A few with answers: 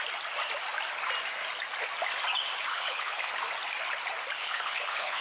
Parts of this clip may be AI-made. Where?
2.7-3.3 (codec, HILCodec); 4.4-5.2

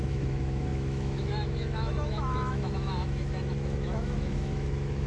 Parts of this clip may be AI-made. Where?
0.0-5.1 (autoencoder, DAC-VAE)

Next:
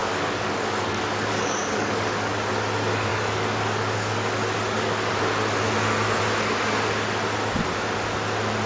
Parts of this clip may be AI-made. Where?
0.0-2.5 (codec, DAC); 3.1-5.1

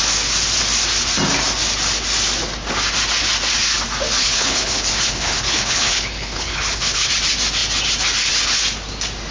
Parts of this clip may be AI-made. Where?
4.2-7.1 (codec, HILCodec)

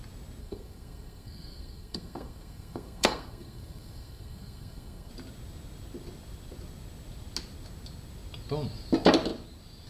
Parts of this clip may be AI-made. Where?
0.4-5.1 (codec, SNAC)